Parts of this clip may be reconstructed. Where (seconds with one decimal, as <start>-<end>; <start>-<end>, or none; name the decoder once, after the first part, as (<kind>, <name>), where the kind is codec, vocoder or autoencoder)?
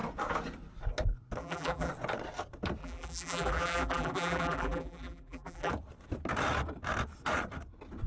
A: 1.4-1.9 (vocoder, BigVGAN v2); 2.8-5.7